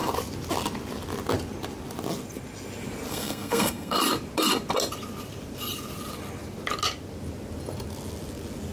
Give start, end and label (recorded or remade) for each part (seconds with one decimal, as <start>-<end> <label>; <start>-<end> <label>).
0.0-3.1 recorded; 3.1-4.0 remade; 4.0-8.7 recorded